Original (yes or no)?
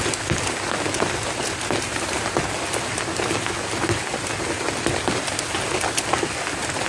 yes